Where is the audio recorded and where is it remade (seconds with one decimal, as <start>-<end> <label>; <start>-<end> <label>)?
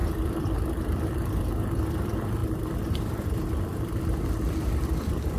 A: 0.0-1.4 remade; 1.4-5.4 recorded